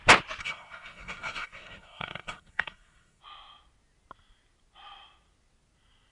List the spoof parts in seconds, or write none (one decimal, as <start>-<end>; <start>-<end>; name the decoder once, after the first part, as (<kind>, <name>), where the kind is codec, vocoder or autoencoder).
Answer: 0.4-3.2 (codec, SNAC)